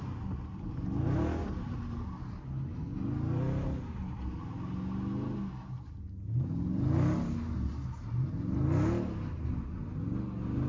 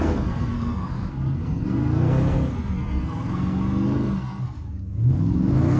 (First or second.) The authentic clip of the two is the first